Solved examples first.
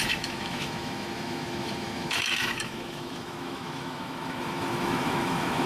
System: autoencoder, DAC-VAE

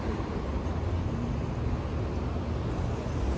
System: none